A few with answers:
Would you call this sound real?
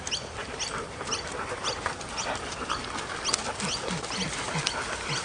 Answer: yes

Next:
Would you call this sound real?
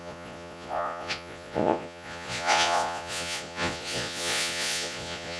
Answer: no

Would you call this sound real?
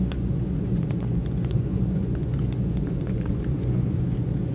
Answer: no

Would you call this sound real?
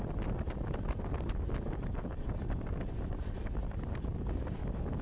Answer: yes